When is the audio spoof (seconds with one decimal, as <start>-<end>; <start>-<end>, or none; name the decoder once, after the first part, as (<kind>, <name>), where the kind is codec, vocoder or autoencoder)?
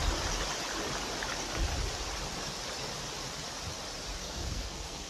4.2-5.1 (codec, SNAC)